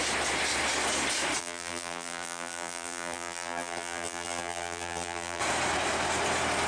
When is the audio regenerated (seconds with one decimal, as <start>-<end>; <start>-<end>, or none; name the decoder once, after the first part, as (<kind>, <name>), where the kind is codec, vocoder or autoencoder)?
1.4-5.4 (vocoder, BigVGAN v2)

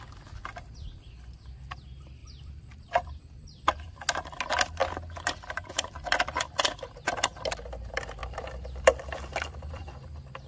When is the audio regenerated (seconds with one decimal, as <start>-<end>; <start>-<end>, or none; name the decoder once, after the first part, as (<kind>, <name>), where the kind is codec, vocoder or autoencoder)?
2.2-3.9 (vocoder, BigVGAN v2); 8.2-9.8

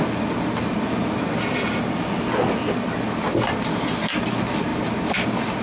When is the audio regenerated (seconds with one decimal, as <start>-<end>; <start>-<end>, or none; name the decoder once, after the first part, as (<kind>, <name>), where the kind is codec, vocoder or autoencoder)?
none

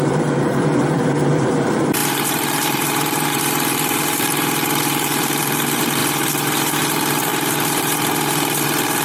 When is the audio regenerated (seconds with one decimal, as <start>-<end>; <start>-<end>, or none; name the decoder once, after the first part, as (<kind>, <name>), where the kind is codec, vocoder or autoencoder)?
0.0-9.0 (vocoder, BigVGAN v2)

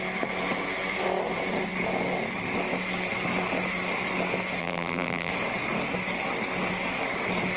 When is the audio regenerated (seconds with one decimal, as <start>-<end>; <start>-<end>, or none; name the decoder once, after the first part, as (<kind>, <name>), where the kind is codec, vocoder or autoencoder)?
4.6-5.3 (vocoder, BigVGAN v2)

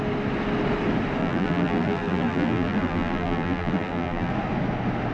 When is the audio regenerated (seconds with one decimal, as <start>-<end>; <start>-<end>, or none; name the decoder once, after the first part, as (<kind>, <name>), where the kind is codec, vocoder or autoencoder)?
1.2-4.3 (vocoder, BigVGAN v2)